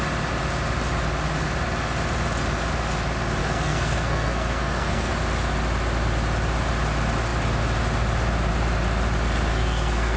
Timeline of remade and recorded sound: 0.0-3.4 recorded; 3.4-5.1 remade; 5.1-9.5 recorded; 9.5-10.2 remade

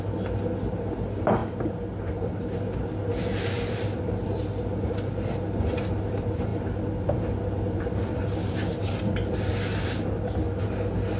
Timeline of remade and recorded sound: 0.0-1.4 recorded; 1.4-2.0 remade; 2.0-3.1 recorded; 3.1-4.8 remade; 4.8-11.2 recorded

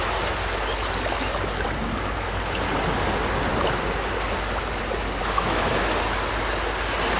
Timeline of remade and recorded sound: 0.0-5.2 recorded; 5.2-5.7 remade; 5.7-7.2 recorded

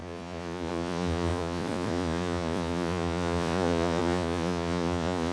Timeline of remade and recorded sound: 0.0-5.3 remade

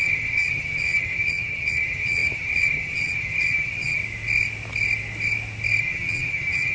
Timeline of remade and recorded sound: 0.0-4.0 remade; 4.0-5.8 recorded; 5.8-6.7 remade

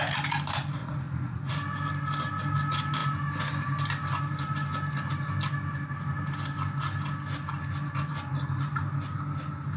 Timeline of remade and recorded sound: 0.0-0.8 recorded; 0.8-1.5 remade; 1.5-9.8 recorded